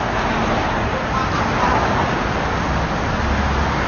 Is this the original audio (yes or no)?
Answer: yes